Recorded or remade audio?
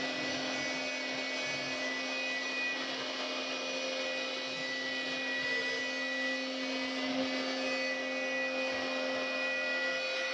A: recorded